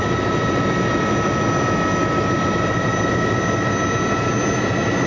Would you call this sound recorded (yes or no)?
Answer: yes